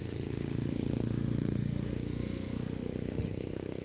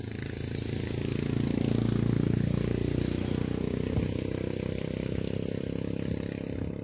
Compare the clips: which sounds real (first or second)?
second